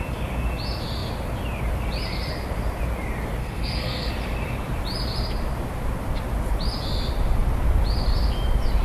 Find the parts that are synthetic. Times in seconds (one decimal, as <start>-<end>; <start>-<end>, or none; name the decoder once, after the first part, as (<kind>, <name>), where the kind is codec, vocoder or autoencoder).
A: 3.4-4.1 (codec, SNAC)